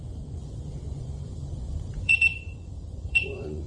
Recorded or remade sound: remade